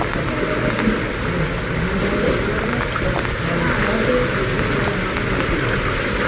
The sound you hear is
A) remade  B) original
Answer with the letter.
B